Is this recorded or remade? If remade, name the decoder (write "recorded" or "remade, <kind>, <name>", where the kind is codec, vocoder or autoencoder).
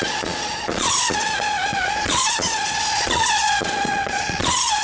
remade, vocoder, Vocos